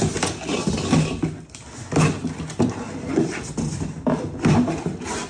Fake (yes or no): no